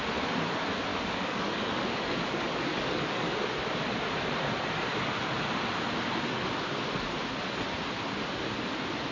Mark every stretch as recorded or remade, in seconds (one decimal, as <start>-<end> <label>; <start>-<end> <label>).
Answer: 0.0-0.9 recorded; 0.9-3.3 remade; 3.3-9.1 recorded